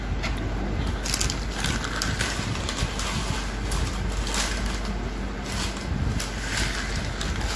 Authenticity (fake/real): real